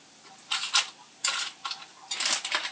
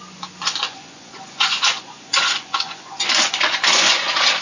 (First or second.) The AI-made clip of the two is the second